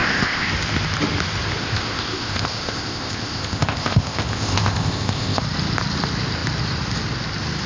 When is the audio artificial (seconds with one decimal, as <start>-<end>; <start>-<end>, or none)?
0.0-0.5; 1.6-5.4